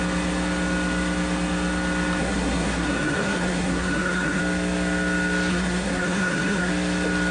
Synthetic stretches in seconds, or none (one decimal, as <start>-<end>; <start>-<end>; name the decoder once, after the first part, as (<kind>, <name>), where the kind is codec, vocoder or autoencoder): 2.2-4.4 (codec, SNAC); 5.5-6.7